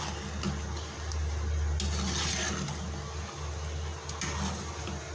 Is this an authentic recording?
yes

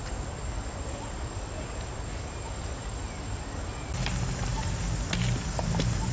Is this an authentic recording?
yes